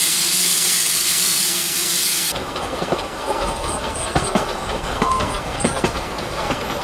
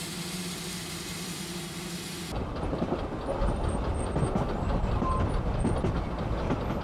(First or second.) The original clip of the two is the second